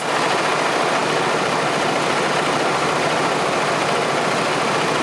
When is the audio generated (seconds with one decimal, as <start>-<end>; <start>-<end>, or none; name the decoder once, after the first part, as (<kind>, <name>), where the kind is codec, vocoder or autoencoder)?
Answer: none